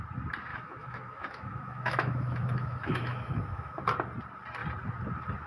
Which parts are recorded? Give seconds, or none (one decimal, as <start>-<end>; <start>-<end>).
0.0-0.5; 3.8-5.5